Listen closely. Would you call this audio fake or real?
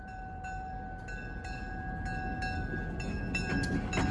real